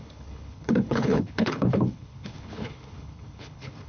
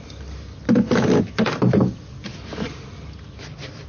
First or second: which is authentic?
second